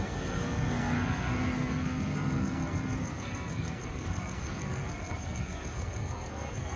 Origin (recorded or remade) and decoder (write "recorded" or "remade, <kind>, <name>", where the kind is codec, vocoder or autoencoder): remade, codec, SNAC